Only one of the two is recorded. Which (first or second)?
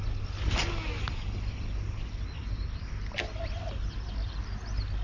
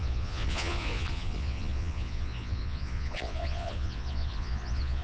first